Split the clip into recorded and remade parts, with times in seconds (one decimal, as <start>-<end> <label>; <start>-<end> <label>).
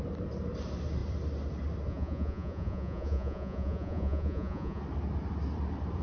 0.0-1.9 recorded; 1.9-4.8 remade; 4.8-6.0 recorded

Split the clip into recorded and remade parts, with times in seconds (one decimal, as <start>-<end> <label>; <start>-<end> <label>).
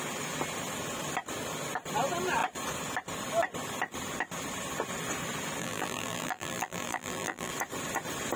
0.0-5.6 recorded; 5.6-7.5 remade; 7.5-8.4 recorded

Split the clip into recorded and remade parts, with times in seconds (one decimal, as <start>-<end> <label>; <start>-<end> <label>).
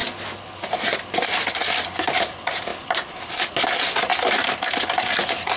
0.0-5.6 recorded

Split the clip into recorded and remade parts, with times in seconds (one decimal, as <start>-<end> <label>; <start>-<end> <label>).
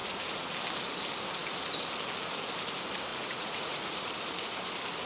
0.0-0.5 remade; 0.5-3.1 recorded; 3.1-4.1 remade; 4.1-5.1 recorded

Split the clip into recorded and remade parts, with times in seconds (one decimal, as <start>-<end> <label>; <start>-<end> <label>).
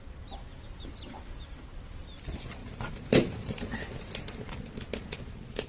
0.0-5.7 recorded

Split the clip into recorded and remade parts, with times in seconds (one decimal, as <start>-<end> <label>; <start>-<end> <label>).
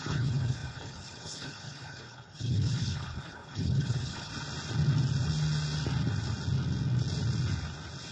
0.0-4.3 remade; 4.3-8.1 recorded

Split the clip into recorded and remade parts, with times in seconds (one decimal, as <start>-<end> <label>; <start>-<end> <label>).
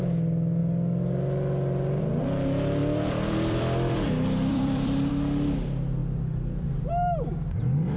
0.0-2.8 recorded; 2.8-5.1 remade; 5.1-8.0 recorded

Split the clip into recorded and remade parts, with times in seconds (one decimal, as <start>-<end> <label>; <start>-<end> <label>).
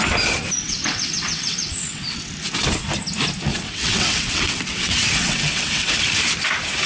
0.0-0.6 recorded; 0.6-2.3 remade; 2.3-3.5 recorded; 3.5-5.9 remade; 5.9-6.9 recorded